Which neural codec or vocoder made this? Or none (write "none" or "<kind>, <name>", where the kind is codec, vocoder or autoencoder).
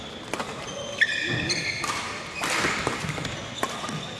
none